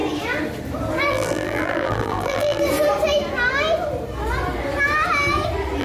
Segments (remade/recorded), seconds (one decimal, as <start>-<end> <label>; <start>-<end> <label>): 0.0-1.1 recorded; 1.1-2.6 remade; 2.6-5.8 recorded